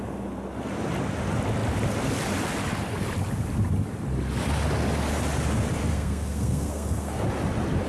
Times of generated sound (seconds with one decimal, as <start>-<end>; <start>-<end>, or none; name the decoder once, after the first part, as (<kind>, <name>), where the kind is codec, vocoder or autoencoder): 5.9-7.2 (codec, SNAC)